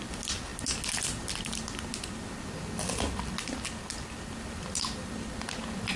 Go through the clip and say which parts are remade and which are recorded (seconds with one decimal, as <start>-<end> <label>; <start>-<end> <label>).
0.0-6.0 recorded